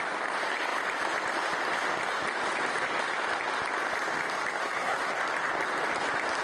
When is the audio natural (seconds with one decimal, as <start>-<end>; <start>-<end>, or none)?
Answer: 0.0-4.6; 5.2-6.4